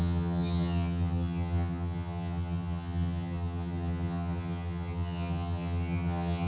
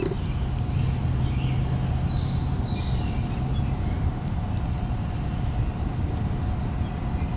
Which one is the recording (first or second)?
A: second